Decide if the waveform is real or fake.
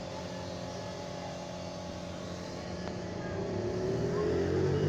real